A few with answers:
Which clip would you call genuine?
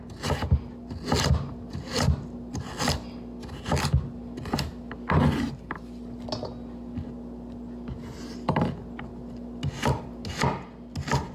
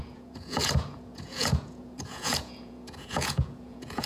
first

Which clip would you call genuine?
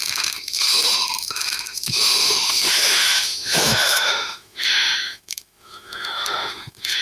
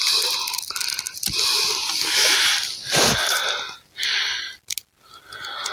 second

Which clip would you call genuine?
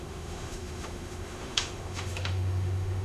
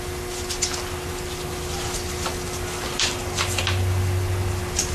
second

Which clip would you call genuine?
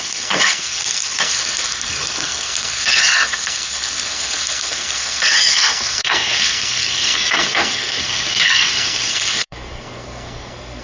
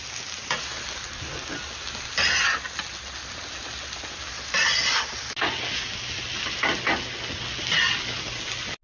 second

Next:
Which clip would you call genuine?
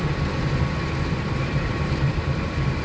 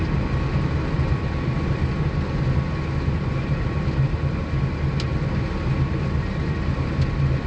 second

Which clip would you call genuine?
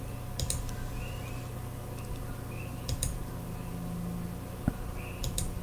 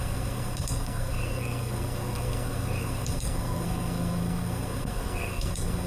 first